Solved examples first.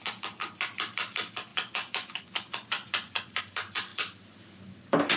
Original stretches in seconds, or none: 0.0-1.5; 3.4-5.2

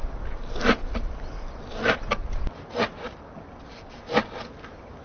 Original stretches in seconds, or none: 0.0-5.0

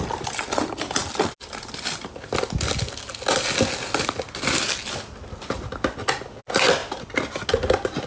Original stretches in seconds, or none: 0.0-8.1

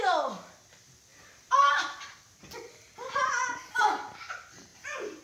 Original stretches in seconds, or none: 0.0-1.1; 2.2-3.2; 3.8-4.7

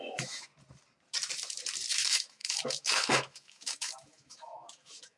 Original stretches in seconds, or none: 0.5-1.9